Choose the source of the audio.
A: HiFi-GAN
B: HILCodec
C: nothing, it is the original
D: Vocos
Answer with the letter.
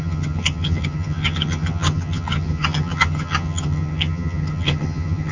A